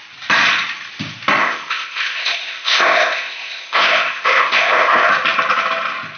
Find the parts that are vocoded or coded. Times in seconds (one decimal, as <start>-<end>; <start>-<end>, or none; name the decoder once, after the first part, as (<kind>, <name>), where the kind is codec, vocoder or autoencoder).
1.4-5.1 (codec, ZipCodec)